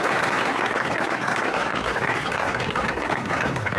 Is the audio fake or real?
fake